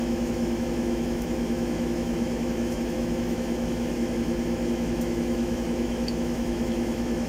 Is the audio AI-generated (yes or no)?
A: yes